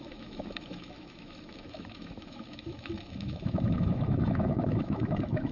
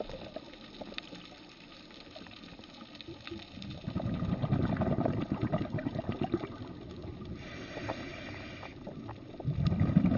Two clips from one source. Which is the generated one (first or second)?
first